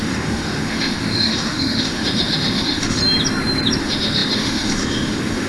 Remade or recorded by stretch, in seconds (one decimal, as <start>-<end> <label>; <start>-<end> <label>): 0.0-3.0 remade; 3.0-3.8 recorded; 3.8-5.5 remade